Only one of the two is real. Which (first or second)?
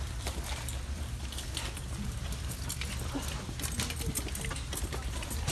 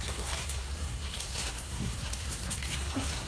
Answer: first